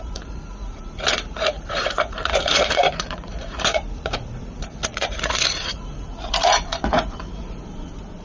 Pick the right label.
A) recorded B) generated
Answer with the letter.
B